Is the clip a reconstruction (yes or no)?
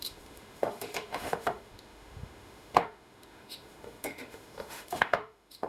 yes